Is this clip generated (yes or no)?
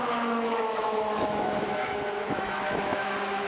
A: yes